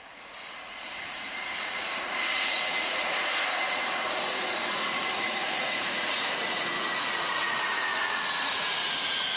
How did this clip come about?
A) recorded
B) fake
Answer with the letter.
B